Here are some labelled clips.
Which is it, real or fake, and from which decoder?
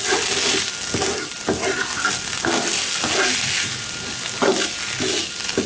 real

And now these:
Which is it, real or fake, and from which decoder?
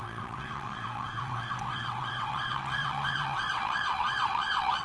fake, vocoder, WaveNeXt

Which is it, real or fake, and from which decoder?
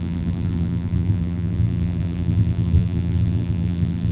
fake, vocoder, BigVGAN v2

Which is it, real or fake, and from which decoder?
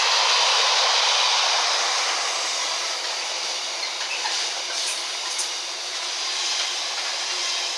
real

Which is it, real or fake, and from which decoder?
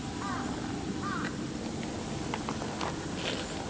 real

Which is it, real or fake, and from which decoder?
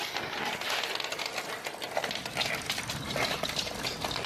real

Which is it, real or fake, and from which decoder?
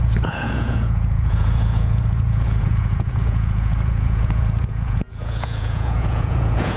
fake, vocoder, Vocos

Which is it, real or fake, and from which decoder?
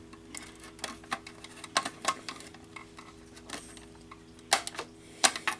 real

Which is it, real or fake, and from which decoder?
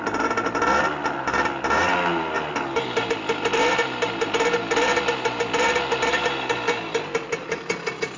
real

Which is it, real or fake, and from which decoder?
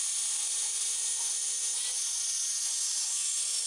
real